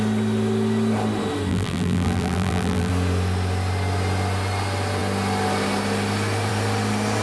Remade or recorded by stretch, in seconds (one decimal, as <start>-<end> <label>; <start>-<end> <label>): 0.0-1.5 recorded; 1.5-2.9 remade; 2.9-7.2 recorded